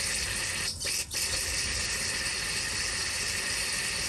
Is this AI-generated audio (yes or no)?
no